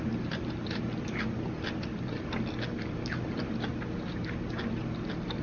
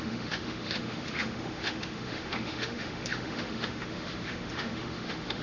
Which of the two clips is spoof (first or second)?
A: second